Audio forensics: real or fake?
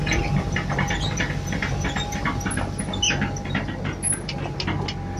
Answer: real